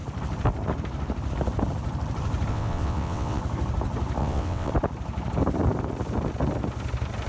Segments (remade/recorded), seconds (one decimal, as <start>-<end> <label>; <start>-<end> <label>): 0.0-2.5 recorded; 2.5-3.4 remade; 3.4-4.2 recorded; 4.2-4.7 remade; 4.7-7.3 recorded